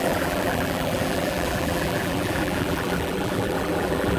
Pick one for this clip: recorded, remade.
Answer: remade